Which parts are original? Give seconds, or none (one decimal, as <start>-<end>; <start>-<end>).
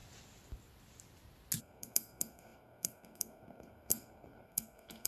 0.0-1.6